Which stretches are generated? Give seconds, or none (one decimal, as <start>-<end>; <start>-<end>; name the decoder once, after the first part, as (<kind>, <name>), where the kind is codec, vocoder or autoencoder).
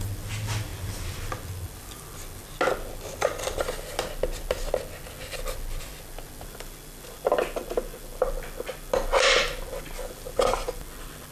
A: none